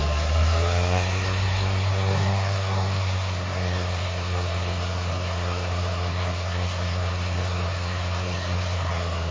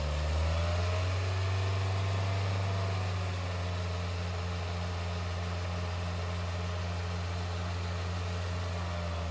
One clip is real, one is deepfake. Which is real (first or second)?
second